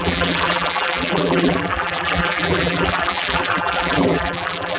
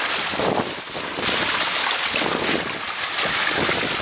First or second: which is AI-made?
first